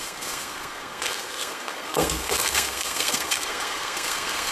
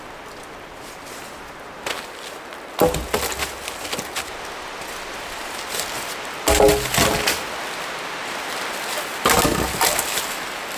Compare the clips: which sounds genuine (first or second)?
second